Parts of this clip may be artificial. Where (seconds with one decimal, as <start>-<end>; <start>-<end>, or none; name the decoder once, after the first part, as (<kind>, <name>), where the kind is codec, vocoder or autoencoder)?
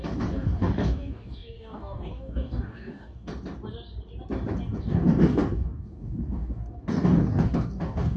0.0-3.3 (codec, DAC); 4.8-8.2